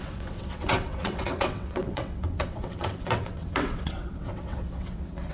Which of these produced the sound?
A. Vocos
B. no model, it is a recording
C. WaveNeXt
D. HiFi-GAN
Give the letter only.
C